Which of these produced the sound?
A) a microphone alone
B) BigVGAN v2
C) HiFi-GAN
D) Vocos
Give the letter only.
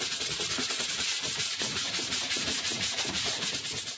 D